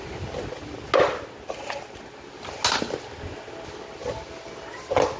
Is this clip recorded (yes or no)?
yes